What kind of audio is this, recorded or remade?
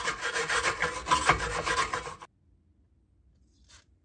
recorded